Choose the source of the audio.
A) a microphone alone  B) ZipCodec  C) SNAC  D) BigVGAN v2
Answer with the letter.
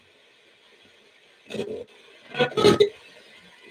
A